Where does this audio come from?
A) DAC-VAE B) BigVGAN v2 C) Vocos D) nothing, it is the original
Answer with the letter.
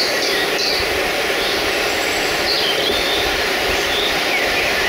B